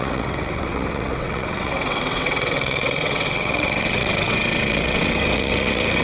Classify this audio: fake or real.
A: fake